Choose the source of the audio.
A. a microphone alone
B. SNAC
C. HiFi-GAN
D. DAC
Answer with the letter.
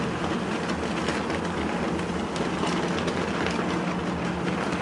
A